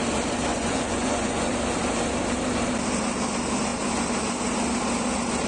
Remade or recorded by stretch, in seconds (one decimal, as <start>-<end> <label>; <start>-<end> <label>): 0.0-0.5 recorded; 0.5-1.5 remade; 1.5-5.5 recorded